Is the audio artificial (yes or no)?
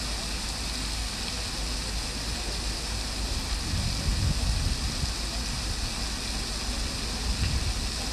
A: no